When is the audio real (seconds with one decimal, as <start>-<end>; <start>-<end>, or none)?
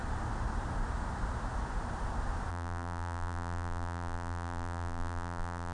0.0-2.5